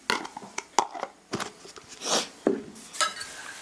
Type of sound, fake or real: real